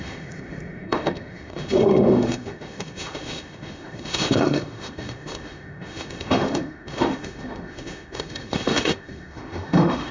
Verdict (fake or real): fake